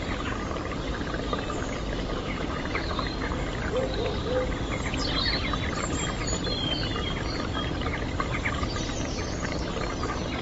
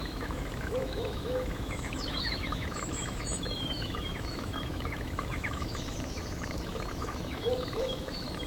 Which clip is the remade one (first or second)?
second